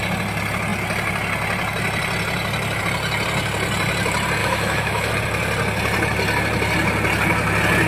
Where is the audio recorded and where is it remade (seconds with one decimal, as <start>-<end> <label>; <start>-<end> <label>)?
0.0-4.4 recorded; 4.4-5.1 remade; 5.1-7.9 recorded